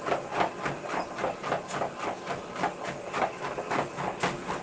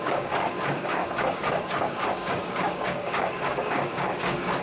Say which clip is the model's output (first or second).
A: second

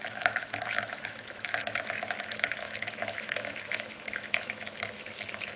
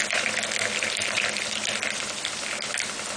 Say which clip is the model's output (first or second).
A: first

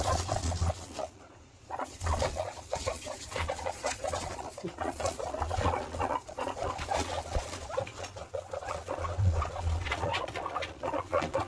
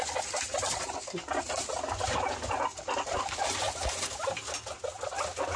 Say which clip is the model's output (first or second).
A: first